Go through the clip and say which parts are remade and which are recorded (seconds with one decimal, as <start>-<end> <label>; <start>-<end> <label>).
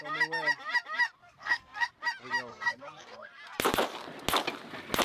0.0-1.2 recorded; 1.2-1.9 remade; 1.9-2.5 recorded; 2.5-3.3 remade; 3.3-5.0 recorded